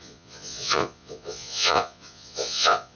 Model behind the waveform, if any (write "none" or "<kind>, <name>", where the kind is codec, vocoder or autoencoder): vocoder, Vocos